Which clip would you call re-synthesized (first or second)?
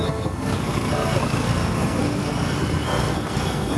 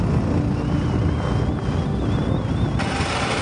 first